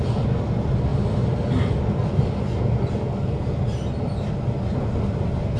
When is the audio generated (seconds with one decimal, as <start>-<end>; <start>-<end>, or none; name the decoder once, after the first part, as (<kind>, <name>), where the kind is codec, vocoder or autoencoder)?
none